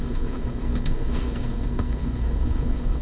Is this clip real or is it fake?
fake